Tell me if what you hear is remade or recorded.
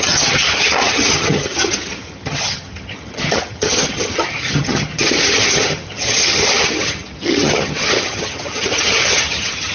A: remade